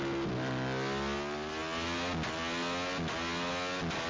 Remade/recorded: recorded